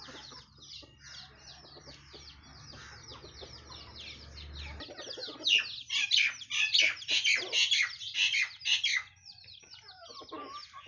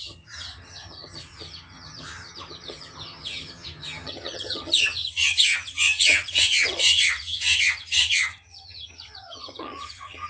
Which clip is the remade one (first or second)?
second